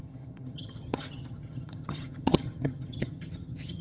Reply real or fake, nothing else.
fake